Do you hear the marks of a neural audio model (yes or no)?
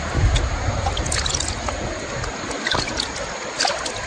no